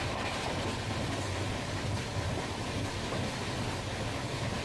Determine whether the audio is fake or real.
real